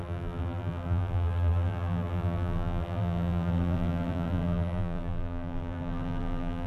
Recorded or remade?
remade